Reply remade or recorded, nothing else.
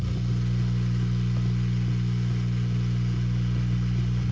recorded